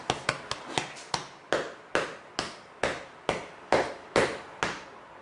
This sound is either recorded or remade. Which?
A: recorded